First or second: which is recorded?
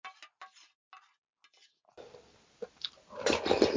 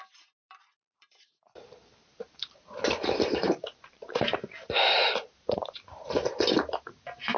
first